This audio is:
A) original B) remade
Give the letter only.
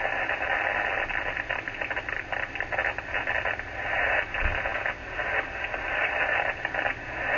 A